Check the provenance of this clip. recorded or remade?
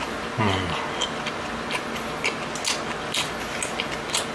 recorded